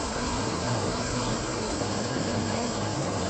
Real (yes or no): no